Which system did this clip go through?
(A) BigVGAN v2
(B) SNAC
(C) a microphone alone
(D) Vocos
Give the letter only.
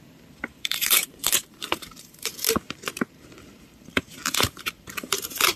A